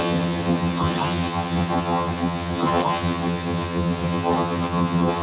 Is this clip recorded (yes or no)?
no